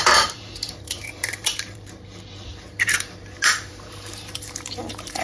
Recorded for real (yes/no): no